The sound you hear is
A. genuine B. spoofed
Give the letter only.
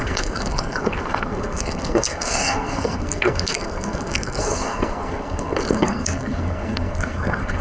B